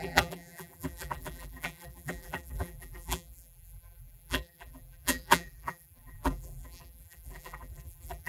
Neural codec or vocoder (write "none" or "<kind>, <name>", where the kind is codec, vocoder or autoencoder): vocoder, BigVGAN v2